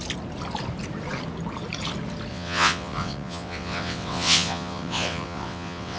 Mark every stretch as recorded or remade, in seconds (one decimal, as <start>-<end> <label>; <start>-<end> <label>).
0.0-2.3 recorded; 2.3-6.0 remade